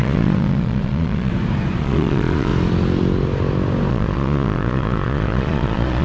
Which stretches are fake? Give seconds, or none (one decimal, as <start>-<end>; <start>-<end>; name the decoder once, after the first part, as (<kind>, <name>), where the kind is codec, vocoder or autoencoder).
0.0-1.3 (vocoder, Vocos); 1.8-2.5; 3.9-6.0